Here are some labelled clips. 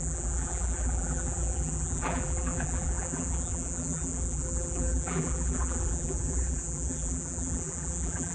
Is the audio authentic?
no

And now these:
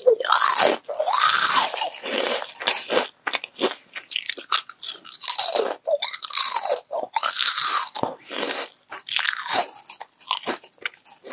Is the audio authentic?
yes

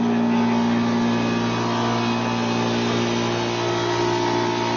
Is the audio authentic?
yes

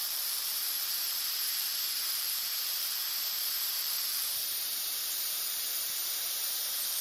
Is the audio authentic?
no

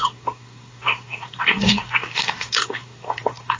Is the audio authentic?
no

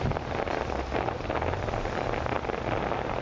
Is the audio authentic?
yes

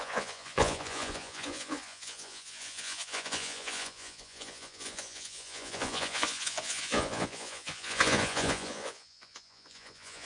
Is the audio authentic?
no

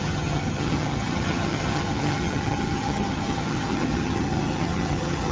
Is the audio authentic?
no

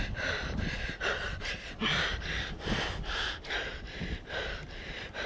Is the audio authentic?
yes